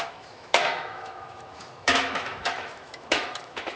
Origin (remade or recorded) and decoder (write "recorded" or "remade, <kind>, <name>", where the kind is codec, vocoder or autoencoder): remade, autoencoder, DAC-VAE